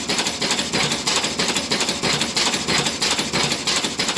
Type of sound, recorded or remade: recorded